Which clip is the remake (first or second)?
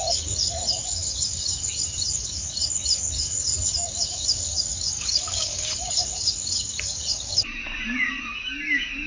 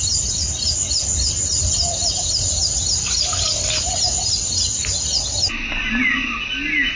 first